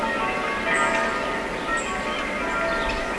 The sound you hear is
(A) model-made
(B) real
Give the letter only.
B